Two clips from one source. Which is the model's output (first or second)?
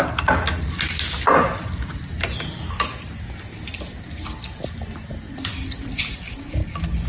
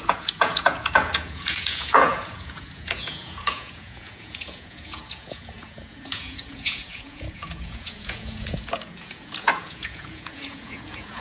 second